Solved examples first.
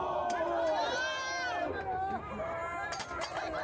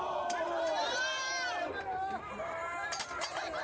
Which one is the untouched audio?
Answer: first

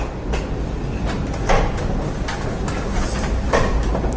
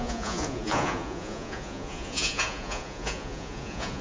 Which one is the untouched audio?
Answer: first